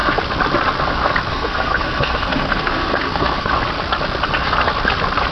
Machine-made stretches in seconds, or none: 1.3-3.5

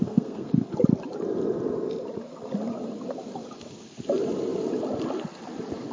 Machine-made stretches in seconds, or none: 0.0-0.7

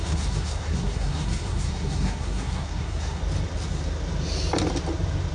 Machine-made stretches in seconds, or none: 0.0-3.2

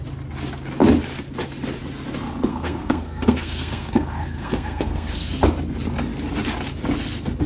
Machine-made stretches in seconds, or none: 2.5-5.3

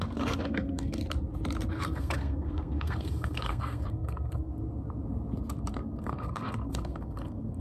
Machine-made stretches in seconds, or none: 0.0-1.0; 1.7-4.5; 5.7-7.6

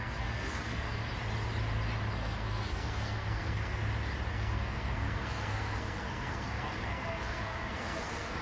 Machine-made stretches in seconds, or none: 0.0-1.0; 2.1-3.8; 4.3-8.4

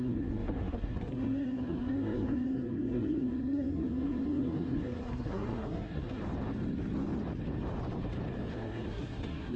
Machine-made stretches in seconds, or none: 0.0-6.2; 8.5-9.6

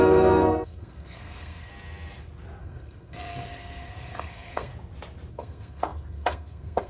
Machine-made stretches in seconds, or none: 0.0-1.7; 2.6-4.7; 5.3-6.9